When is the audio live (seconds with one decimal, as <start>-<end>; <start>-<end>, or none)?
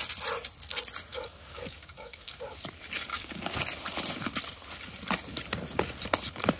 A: 0.0-1.1; 2.4-3.1; 3.6-6.6